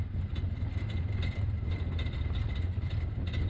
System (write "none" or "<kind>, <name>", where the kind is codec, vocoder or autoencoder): none